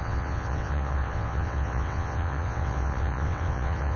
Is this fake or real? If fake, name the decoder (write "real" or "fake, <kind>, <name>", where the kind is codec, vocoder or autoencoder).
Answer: fake, vocoder, WaveNeXt